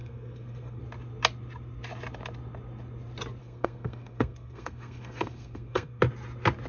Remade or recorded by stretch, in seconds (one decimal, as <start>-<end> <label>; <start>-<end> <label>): 0.0-0.8 remade; 0.8-3.4 recorded; 3.4-6.0 remade; 6.0-6.7 recorded